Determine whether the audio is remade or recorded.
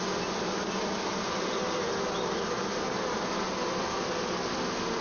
recorded